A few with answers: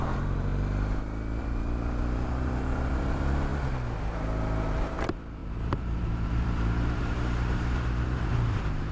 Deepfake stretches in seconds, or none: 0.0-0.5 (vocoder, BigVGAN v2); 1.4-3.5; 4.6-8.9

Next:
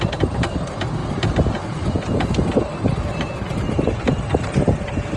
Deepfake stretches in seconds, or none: none

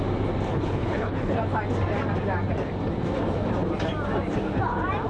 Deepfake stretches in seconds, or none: 0.5-1.4 (codec, HILCodec)

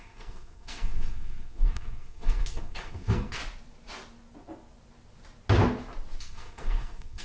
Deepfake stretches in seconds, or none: 0.0-3.4 (codec, SNAC); 6.2-7.2

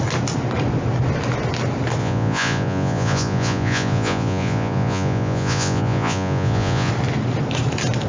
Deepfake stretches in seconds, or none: 2.0-6.9 (vocoder, Vocos)

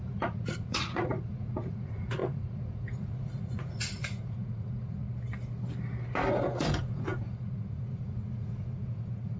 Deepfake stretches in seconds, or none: 0.0-5.0 (vocoder, Vocos); 6.3-9.4

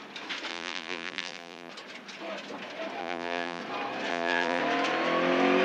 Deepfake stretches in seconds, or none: 0.5-1.7 (vocoder, BigVGAN v2); 3.0-3.6; 4.1-4.6

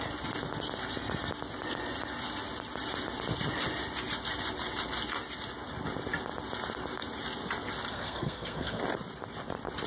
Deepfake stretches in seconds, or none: 7.9-8.8 (codec, SNAC)